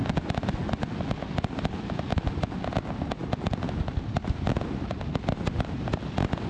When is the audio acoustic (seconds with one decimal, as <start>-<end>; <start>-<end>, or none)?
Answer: 0.0-0.5; 2.1-2.7